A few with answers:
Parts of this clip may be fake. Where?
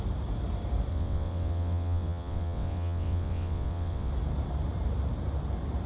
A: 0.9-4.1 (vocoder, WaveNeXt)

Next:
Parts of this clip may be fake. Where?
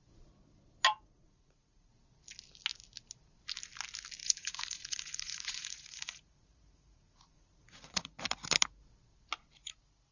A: 0.9-1.9 (vocoder, Vocos); 4.2-8.2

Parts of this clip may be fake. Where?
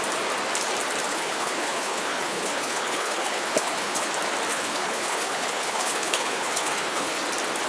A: 1.1-4.1 (codec, HILCodec); 4.5-7.2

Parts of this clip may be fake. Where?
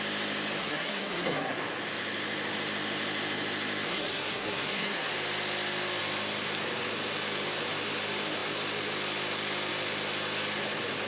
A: 0.6-1.6 (codec, SNAC); 3.9-5.1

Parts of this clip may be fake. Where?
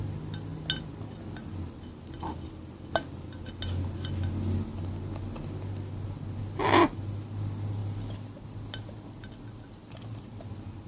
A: none